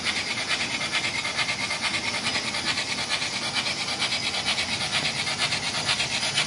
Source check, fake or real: real